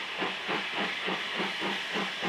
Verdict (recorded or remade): recorded